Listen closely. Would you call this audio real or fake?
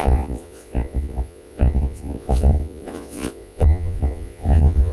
fake